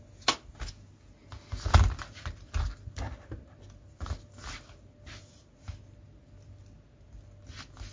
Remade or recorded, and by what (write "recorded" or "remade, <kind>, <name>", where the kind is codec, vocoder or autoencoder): recorded